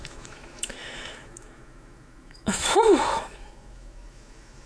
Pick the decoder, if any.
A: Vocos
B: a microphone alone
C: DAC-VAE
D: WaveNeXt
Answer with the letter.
C